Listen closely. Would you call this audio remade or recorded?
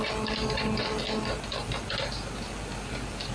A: recorded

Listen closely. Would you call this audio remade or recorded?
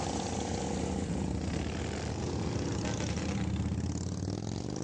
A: recorded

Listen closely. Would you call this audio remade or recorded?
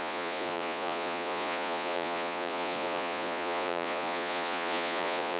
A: remade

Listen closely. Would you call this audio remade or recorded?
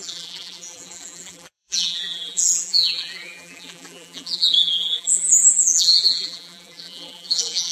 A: remade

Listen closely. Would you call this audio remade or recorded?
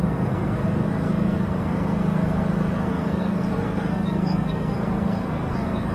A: remade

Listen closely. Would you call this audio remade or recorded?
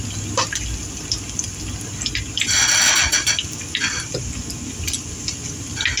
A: recorded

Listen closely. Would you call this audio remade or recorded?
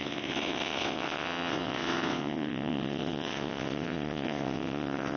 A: remade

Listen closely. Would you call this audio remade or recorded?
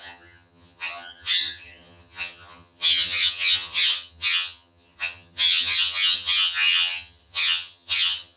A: remade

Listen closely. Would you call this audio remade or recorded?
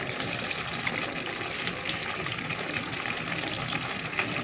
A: recorded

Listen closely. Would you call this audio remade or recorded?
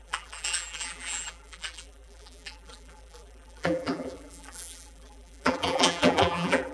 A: remade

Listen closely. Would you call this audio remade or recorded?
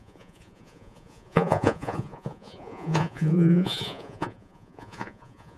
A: remade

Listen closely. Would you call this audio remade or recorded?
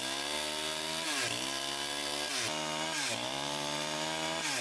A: recorded